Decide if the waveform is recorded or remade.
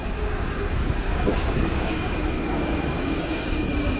remade